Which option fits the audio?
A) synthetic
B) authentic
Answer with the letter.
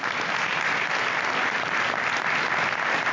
B